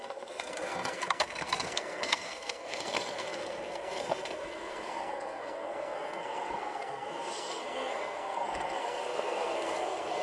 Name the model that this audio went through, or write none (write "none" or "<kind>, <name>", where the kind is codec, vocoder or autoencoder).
codec, SNAC